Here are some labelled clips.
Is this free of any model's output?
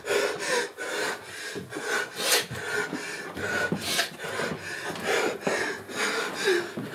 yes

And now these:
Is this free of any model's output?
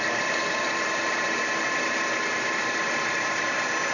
no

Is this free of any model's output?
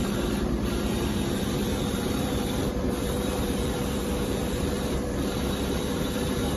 no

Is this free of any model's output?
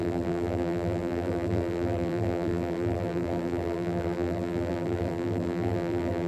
no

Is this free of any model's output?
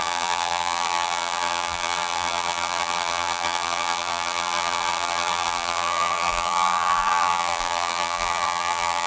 no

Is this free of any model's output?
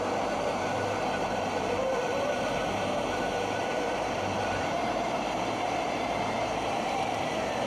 no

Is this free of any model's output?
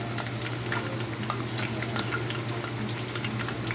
yes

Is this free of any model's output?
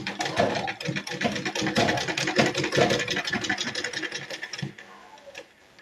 yes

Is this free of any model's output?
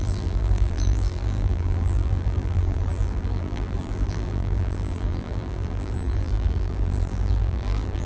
no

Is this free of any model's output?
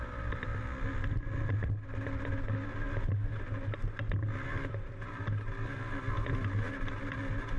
yes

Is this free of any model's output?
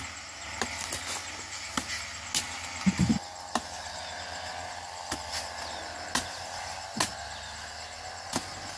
yes